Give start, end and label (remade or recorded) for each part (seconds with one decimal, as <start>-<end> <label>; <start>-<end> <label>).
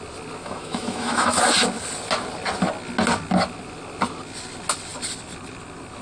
0.0-0.4 recorded; 0.4-1.4 remade; 1.4-6.0 recorded